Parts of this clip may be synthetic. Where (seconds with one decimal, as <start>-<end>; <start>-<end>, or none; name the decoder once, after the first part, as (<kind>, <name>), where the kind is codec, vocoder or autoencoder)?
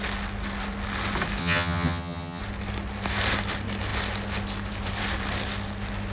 1.4-2.4 (vocoder, HiFi-GAN)